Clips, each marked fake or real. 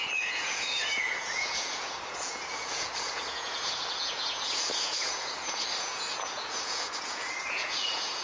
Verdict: fake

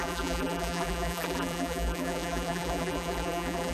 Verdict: fake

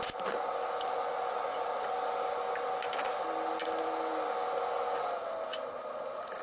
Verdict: real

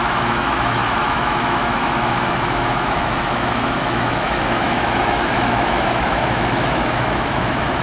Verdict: fake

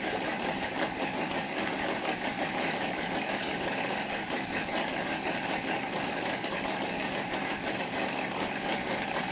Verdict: fake